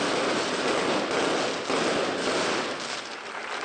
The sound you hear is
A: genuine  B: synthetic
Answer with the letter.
A